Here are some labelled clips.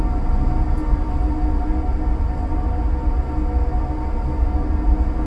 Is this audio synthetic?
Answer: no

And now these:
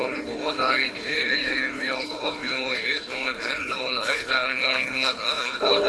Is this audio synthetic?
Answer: yes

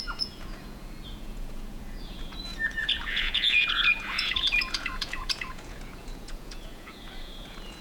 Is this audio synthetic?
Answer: yes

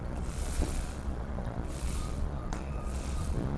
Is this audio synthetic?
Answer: yes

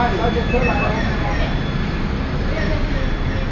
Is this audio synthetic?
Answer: no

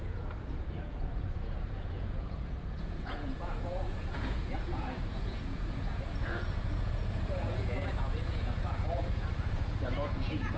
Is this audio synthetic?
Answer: yes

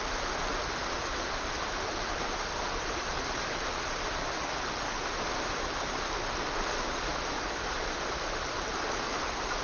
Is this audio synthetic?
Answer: no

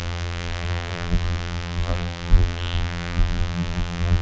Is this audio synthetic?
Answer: yes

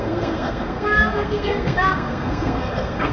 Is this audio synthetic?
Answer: yes